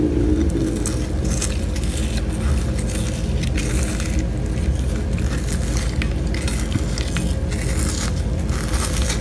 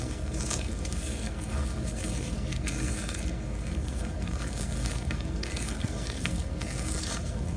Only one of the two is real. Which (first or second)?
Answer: first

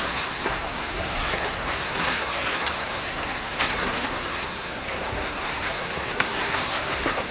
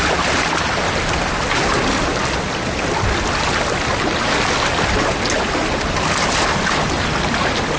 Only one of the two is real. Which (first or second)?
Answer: second